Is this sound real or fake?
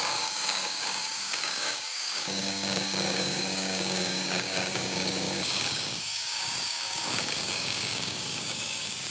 fake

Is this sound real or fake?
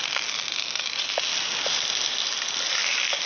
real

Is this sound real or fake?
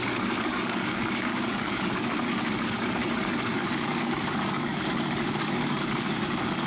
fake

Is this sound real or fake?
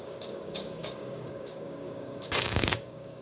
fake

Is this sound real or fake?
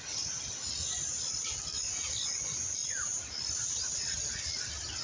real